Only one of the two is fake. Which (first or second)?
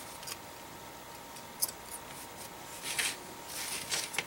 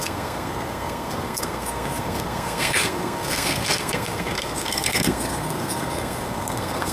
second